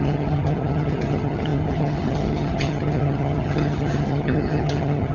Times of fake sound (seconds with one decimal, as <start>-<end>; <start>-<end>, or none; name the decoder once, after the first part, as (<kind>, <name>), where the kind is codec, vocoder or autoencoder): 0.0-5.1 (vocoder, HiFi-GAN)